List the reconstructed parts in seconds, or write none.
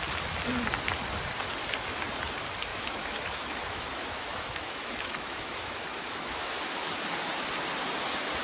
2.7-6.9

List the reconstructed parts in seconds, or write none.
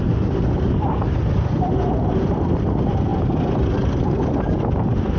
none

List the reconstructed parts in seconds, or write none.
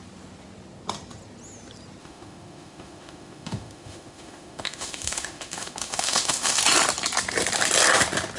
2.0-6.6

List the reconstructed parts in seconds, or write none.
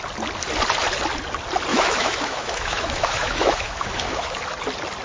1.7-4.4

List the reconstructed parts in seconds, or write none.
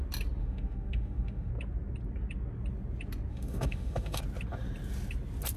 0.4-1.5; 3.3-4.2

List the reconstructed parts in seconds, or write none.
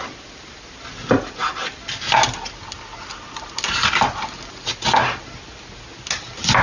none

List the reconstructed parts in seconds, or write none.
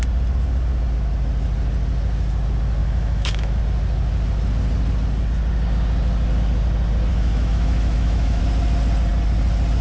2.8-3.6; 7.1-8.4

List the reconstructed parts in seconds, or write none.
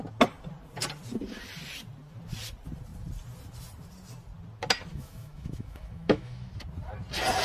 4.9-6.5